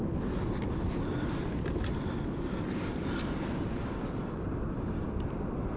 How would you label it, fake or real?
real